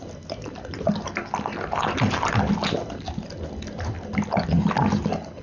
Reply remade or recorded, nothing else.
recorded